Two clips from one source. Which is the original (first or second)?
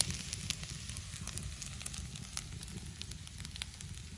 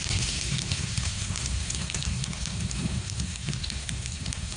first